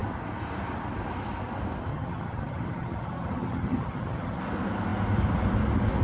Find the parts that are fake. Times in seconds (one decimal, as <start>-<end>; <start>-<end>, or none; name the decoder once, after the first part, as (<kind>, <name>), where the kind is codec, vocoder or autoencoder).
1.9-4.4 (vocoder, HiFi-GAN)